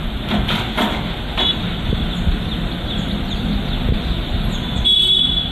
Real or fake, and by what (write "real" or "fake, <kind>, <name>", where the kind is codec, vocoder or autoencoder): real